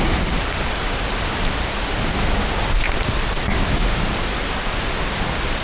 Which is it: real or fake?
real